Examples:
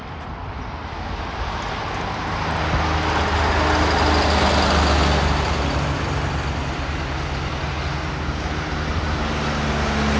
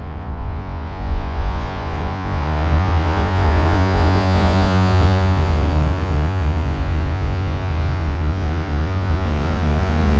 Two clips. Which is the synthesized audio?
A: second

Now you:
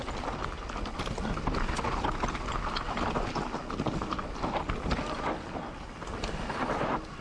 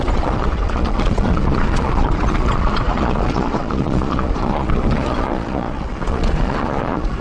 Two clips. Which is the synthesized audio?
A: second